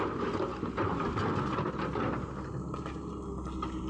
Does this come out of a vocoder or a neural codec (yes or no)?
no